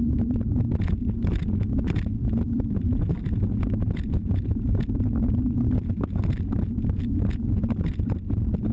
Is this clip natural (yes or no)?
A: yes